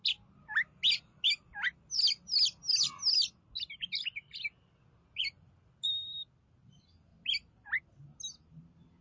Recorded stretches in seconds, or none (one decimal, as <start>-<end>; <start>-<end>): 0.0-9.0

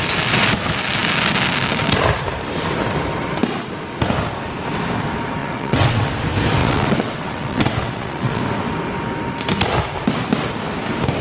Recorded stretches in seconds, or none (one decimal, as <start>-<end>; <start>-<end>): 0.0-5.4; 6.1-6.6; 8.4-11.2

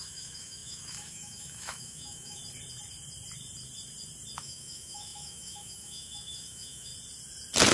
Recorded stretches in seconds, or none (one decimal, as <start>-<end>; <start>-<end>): 2.4-4.4; 6.9-7.7

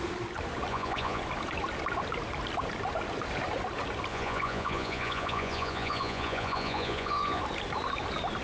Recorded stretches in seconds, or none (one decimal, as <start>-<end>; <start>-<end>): 0.0-0.7; 1.2-4.1; 7.4-8.4

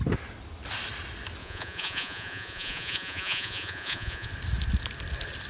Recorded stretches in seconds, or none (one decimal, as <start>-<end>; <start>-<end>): 0.0-1.4; 4.3-5.5

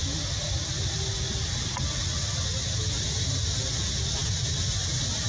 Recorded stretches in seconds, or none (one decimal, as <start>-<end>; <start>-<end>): 0.0-5.3

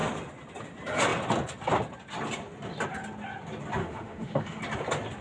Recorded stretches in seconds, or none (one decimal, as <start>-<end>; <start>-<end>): 0.0-3.8; 4.6-5.2

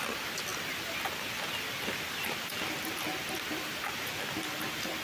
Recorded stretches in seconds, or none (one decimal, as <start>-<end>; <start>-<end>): 0.0-5.0